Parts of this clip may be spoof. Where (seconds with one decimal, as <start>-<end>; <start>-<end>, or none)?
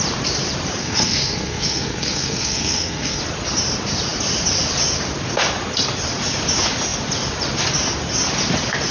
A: 0.8-3.2